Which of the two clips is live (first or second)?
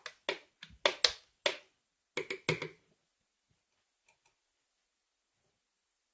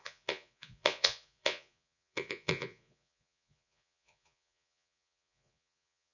first